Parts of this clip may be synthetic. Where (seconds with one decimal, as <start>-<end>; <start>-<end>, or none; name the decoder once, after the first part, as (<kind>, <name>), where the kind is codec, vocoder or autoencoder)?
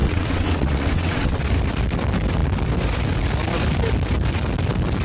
0.0-1.4 (vocoder, WaveNeXt)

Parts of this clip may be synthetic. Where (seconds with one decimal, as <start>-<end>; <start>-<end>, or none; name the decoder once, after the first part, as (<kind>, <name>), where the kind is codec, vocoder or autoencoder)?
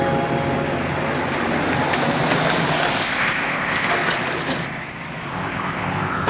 2.9-3.9 (codec, ZipCodec); 5.3-6.3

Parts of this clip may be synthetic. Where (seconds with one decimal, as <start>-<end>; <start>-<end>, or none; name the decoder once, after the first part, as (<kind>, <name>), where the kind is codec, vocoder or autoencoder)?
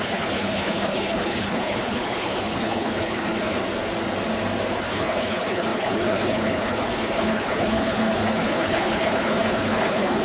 0.0-3.6 (codec, HILCodec); 4.7-10.2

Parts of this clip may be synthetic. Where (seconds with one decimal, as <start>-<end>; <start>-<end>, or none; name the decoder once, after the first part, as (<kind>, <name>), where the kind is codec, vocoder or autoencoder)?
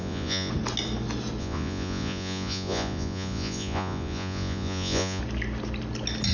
0.0-0.5 (vocoder, Vocos); 1.4-5.2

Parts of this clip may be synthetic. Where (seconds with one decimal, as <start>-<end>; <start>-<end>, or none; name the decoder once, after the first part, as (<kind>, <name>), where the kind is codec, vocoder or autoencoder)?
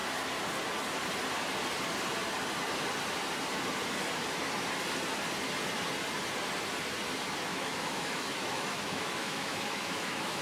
7.5-10.4 (autoencoder, DAC-VAE)